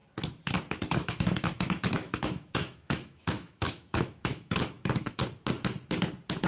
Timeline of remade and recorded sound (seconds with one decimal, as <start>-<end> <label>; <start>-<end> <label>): 0.0-1.0 recorded; 1.0-4.9 remade; 4.9-6.5 recorded